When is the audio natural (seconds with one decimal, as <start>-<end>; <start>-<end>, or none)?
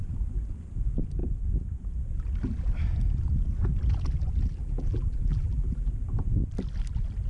0.0-4.6; 5.9-7.3